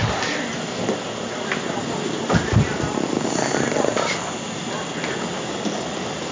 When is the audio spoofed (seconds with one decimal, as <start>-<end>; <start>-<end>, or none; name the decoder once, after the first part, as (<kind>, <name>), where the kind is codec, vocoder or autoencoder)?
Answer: none